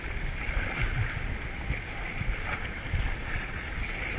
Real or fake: real